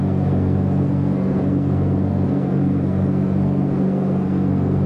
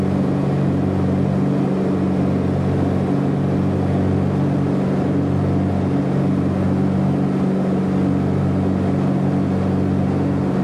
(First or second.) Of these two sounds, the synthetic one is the first